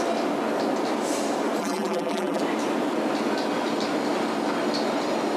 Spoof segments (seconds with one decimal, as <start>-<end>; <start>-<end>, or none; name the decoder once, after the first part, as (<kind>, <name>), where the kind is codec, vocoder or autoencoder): 1.6-2.4 (vocoder, BigVGAN v2)